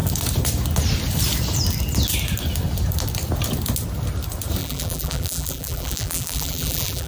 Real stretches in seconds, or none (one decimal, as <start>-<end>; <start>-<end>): 0.0-4.6